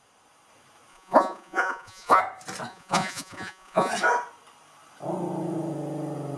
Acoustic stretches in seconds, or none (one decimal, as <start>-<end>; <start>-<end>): 0.0-0.9; 2.2-2.7; 3.9-6.4